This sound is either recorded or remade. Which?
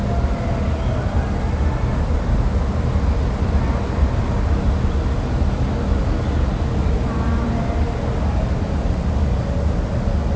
recorded